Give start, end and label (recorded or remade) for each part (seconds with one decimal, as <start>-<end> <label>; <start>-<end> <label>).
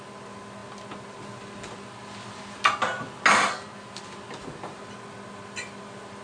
0.0-6.2 recorded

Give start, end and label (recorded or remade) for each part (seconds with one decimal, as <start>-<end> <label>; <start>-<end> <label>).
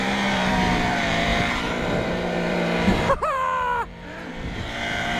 0.0-5.2 remade